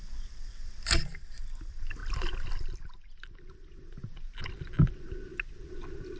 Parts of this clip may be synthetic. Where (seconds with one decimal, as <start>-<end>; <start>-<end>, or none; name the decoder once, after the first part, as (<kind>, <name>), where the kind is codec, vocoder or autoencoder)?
none